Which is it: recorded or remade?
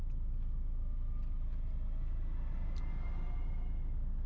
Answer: recorded